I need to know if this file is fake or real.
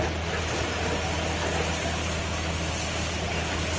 real